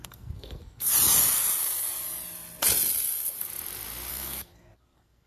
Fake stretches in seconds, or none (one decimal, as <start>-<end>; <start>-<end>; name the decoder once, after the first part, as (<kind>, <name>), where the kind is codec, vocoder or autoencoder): 0.0-0.9 (codec, SNAC); 4.1-5.3